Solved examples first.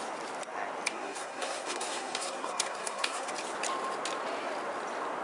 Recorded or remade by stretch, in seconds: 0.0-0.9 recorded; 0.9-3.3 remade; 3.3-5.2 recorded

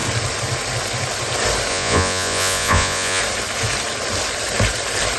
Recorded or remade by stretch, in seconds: 0.0-1.7 recorded; 1.7-3.2 remade; 3.2-5.2 recorded

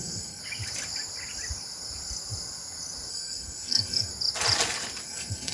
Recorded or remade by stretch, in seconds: 0.0-0.4 remade; 0.4-3.1 recorded; 3.1-4.1 remade; 4.1-5.0 recorded; 5.0-5.5 remade

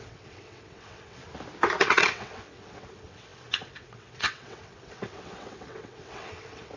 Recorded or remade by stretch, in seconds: 0.0-1.2 remade; 1.2-1.8 recorded; 1.8-6.8 remade

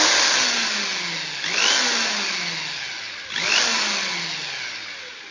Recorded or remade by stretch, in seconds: 0.0-5.3 recorded

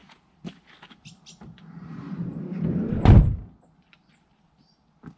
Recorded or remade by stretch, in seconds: 0.0-3.1 remade; 3.1-5.2 recorded

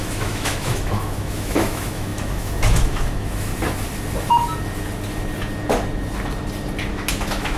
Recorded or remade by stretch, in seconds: 0.0-3.5 remade; 3.5-6.9 recorded; 6.9-7.6 remade